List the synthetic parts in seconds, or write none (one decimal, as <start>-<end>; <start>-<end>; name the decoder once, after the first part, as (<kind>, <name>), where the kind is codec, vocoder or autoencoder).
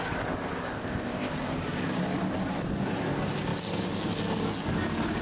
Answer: 0.7-1.3 (codec, ZipCodec)